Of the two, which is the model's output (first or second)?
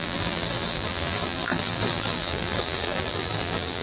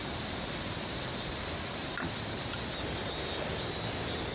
first